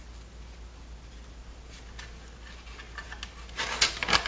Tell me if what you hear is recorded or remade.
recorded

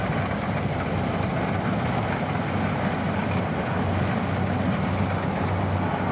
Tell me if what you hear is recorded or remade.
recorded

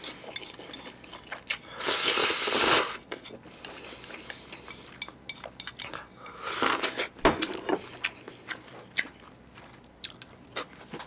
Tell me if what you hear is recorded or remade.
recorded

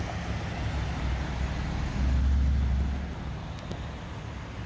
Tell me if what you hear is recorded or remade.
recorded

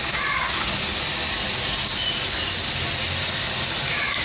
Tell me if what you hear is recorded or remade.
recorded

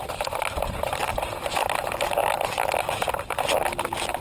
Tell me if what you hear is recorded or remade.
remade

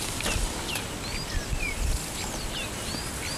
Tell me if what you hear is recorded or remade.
recorded